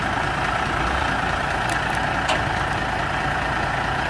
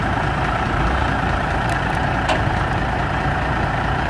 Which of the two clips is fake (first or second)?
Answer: second